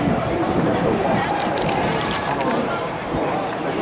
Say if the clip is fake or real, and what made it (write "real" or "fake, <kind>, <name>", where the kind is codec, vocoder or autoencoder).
fake, vocoder, BigVGAN v2